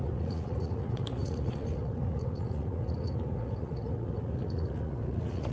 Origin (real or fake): fake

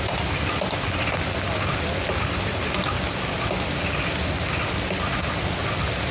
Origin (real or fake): real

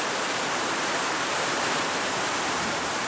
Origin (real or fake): fake